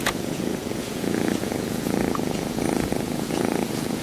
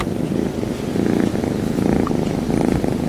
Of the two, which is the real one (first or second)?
second